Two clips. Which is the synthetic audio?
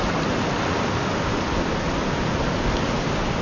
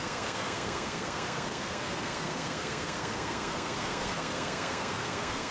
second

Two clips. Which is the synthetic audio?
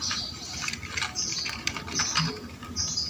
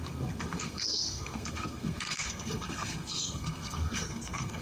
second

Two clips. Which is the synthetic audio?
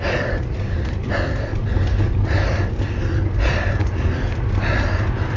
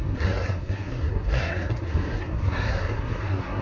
second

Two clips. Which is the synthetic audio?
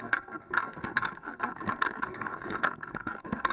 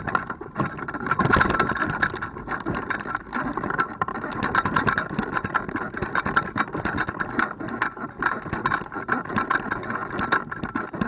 first